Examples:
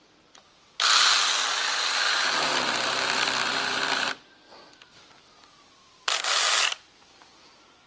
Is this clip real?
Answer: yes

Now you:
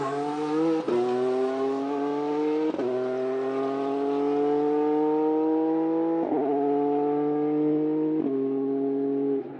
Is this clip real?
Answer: yes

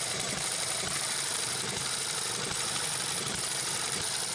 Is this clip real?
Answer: no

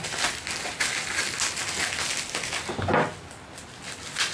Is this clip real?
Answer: yes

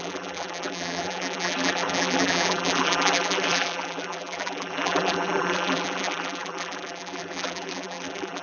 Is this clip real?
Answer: no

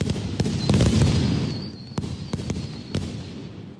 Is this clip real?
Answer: yes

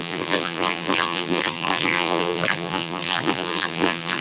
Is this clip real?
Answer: no